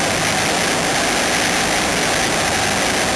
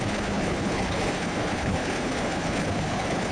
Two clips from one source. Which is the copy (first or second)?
second